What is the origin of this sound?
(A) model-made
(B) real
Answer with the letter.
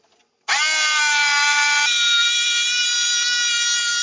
B